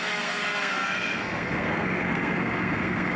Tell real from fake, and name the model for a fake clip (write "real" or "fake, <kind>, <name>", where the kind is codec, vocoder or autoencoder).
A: fake, codec, SNAC